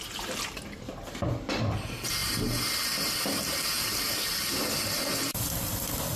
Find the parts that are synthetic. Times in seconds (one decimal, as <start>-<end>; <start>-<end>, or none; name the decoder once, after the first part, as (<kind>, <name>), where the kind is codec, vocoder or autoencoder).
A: none